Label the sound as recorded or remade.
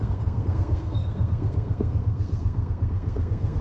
remade